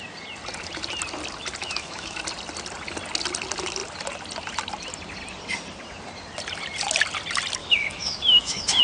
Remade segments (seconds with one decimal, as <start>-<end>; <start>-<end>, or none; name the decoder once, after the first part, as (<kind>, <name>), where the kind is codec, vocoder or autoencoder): 1.6-2.2 (autoencoder, DAC-VAE); 7.6-8.8